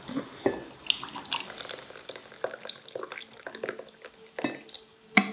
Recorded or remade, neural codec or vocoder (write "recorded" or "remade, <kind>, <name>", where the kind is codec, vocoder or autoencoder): recorded